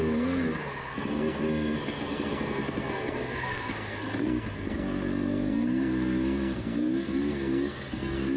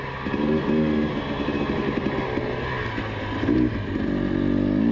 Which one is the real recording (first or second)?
second